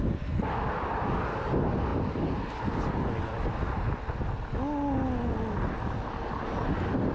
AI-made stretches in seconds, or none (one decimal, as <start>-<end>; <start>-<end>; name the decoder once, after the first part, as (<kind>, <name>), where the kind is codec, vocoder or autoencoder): none